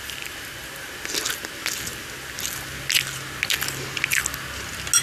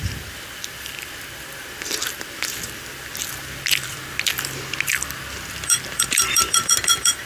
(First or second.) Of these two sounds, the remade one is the second